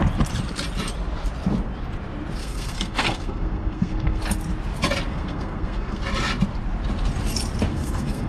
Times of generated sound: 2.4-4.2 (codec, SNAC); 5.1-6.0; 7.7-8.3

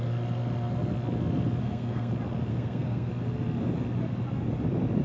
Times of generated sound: 1.6-2.1 (codec, SNAC); 2.5-3.1